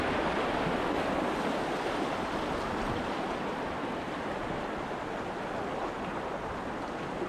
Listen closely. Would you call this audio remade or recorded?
recorded